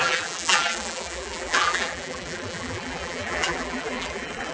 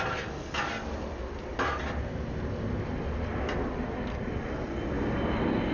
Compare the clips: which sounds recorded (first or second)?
second